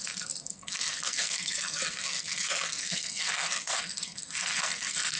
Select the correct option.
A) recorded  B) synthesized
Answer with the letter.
B